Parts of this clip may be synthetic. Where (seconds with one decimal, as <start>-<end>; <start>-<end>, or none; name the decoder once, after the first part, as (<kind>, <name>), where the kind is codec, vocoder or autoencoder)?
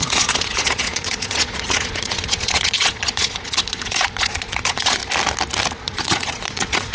0.0-5.0 (vocoder, Vocos); 5.7-6.9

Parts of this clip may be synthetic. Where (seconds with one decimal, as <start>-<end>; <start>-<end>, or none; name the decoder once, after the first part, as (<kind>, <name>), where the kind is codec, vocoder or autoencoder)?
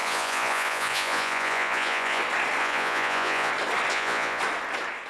0.0-2.2 (vocoder, Vocos); 2.6-3.5; 3.9-4.4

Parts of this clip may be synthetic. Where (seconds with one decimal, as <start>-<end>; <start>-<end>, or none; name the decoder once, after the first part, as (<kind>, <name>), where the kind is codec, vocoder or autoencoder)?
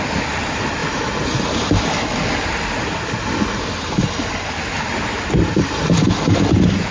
none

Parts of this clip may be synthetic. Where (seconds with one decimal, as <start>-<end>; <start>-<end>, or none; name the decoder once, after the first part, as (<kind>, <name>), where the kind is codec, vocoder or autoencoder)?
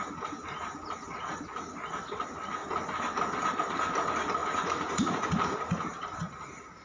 4.4-5.8 (vocoder, Vocos)